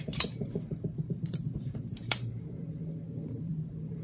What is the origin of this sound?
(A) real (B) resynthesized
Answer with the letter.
B